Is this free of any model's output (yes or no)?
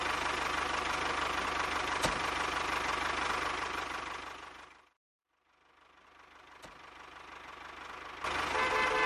yes